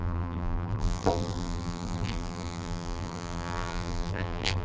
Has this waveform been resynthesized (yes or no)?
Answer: yes